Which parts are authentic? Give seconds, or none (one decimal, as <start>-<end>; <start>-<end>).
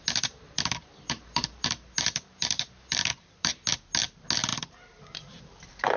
3.6-4.5